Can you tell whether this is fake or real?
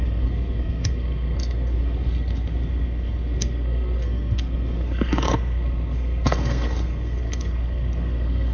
fake